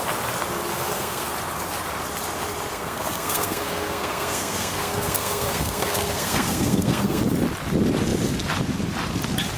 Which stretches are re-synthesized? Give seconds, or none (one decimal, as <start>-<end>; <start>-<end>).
0.7-1.3; 2.7-7.2